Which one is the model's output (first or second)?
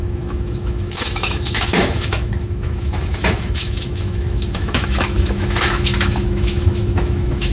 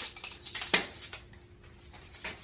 first